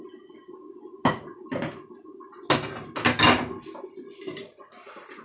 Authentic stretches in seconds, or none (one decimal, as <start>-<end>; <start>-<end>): 0.0-5.2